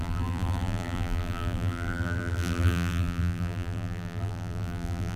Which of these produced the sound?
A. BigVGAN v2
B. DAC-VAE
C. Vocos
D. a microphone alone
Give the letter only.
A